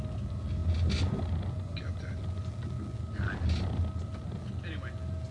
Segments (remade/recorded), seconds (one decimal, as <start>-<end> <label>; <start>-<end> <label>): 0.0-5.3 recorded